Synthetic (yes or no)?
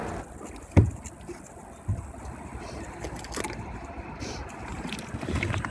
no